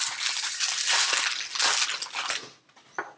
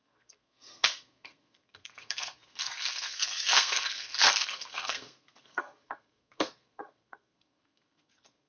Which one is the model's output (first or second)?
second